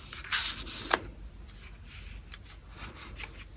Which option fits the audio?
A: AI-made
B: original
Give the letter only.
B